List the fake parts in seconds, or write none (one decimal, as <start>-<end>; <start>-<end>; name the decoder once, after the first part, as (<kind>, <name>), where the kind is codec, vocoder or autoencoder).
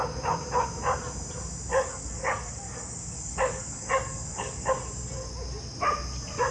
1.7-4.7 (codec, DAC)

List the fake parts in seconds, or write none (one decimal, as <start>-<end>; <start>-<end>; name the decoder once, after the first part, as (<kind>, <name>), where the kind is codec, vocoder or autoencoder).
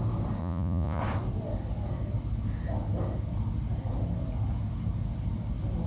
0.4-1.0 (vocoder, Vocos)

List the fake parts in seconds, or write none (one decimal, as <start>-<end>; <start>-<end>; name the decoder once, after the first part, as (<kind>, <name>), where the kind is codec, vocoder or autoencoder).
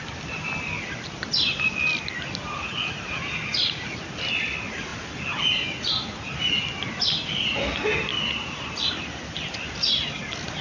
none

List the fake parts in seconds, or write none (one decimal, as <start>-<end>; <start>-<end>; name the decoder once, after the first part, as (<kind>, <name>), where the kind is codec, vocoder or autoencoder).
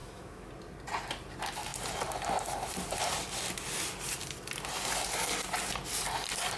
0.0-0.5 (autoencoder, DAC-VAE)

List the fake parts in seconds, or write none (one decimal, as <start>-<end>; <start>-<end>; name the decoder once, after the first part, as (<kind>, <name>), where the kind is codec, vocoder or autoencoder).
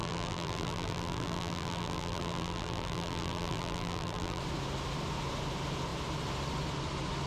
0.0-4.4 (vocoder, BigVGAN v2)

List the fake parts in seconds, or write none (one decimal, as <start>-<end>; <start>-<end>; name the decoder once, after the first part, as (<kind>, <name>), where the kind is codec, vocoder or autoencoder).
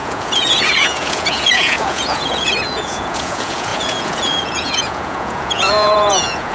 0.0-6.5 (vocoder, Vocos)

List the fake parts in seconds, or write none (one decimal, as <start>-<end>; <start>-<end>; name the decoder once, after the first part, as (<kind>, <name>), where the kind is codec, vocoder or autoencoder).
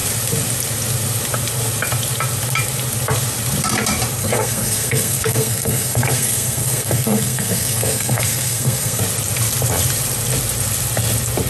4.2-9.0 (codec, SNAC)